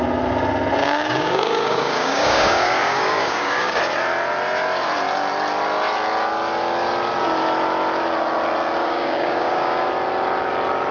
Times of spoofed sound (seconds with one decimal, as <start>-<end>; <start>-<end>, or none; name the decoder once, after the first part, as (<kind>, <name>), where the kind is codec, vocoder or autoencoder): 0.8-3.8 (codec, DAC); 8.8-9.9